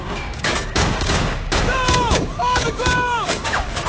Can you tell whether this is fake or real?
fake